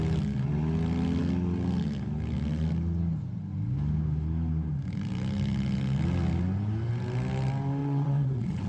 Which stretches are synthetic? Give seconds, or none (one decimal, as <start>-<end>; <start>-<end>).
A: 7.8-8.7